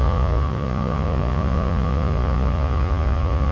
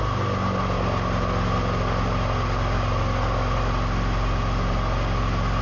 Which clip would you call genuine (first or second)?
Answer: second